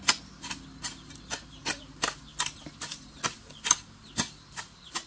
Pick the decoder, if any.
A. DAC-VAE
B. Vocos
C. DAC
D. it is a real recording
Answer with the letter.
D